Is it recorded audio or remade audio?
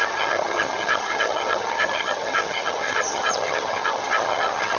remade